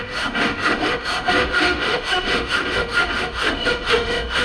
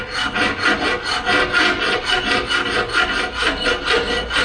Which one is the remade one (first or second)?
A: first